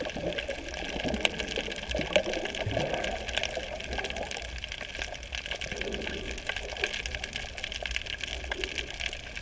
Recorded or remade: recorded